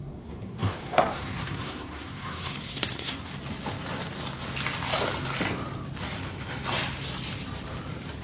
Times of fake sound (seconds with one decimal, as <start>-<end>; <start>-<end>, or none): 0.0-3.3